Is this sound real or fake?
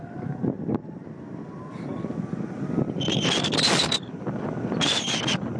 real